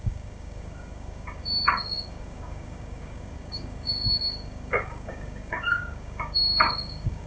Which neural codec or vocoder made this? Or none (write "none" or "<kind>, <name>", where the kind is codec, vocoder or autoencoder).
codec, DAC